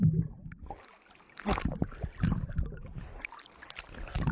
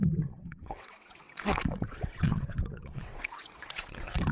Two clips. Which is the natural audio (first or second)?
first